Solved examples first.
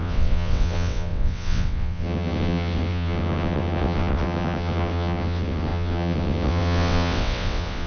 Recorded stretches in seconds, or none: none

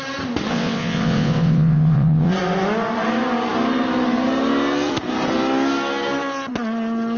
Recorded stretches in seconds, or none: 0.0-0.5; 2.3-7.2

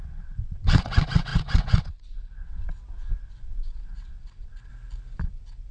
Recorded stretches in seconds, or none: 4.7-5.2